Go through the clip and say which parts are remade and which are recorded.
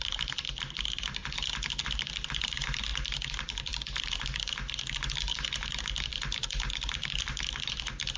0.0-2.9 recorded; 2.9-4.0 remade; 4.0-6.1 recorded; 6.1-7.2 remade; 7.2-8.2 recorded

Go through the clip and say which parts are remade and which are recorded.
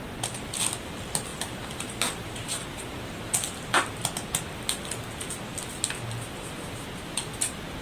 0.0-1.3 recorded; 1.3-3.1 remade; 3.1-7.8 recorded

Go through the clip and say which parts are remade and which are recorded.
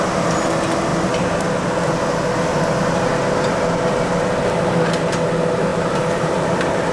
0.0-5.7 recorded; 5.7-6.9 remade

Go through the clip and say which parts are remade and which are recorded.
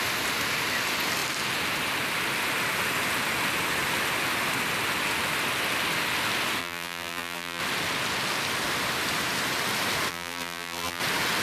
0.0-6.6 recorded; 6.6-7.6 remade; 7.6-10.1 recorded; 10.1-11.0 remade; 11.0-11.4 recorded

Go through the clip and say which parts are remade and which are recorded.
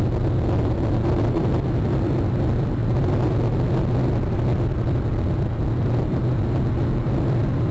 0.0-7.7 recorded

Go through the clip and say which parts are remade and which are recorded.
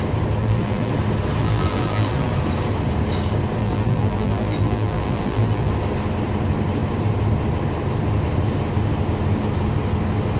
0.0-0.4 recorded; 0.4-0.9 remade; 0.9-1.4 recorded; 1.4-2.3 remade; 2.3-3.6 recorded; 3.6-5.7 remade; 5.7-10.4 recorded